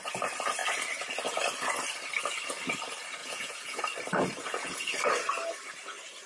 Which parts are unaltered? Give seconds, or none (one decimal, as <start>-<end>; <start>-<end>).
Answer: 0.0-3.2; 3.8-4.4; 4.9-6.3